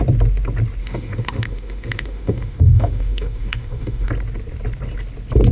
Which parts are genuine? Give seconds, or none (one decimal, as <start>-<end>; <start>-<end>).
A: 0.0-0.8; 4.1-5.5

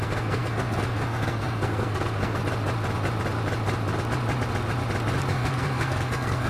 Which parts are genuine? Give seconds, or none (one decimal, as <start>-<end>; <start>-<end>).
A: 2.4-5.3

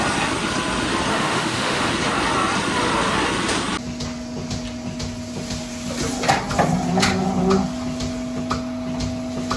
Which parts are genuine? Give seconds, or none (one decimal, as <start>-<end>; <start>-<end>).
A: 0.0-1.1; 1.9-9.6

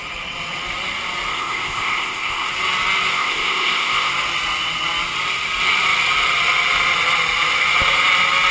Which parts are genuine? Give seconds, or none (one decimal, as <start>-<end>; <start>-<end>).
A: 0.0-1.3; 2.5-3.1; 4.1-8.5

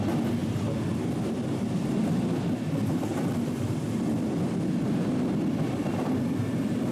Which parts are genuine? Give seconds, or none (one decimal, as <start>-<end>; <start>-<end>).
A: 0.0-6.9

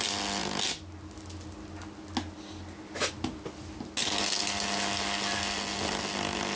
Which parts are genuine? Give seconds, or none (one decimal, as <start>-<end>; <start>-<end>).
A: 0.0-6.6